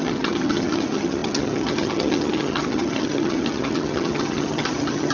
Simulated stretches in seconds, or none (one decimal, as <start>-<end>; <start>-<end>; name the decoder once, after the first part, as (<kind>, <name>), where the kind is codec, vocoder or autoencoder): 0.0-5.1 (vocoder, HiFi-GAN)